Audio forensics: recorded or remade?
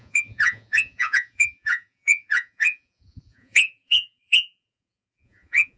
remade